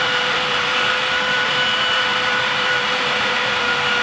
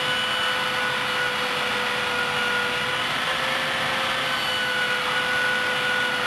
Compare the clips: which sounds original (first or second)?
second